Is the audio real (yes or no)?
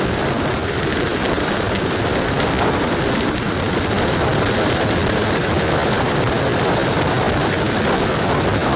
yes